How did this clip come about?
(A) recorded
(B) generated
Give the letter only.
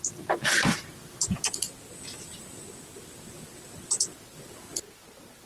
A